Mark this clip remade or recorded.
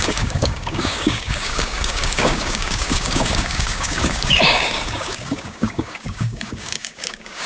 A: remade